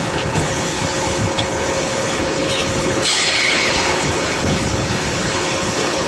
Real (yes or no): no